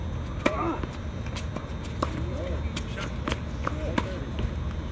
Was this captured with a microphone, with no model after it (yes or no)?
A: yes